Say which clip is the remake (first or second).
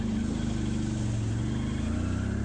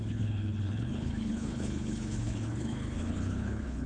second